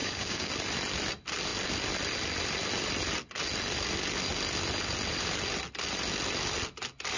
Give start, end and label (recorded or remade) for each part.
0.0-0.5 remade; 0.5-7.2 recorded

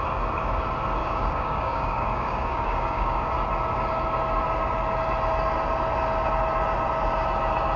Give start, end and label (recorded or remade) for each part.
0.0-1.0 recorded; 1.0-3.3 remade; 3.3-7.8 recorded

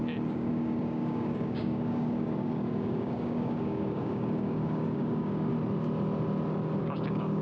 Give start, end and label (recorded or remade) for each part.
0.0-5.5 remade; 5.5-6.8 recorded; 6.8-7.4 remade